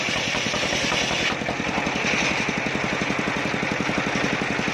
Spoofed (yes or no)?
no